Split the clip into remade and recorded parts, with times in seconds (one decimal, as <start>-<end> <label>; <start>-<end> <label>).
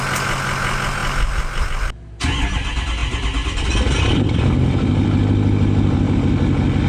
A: 0.0-3.0 recorded; 3.0-6.2 remade; 6.2-6.9 recorded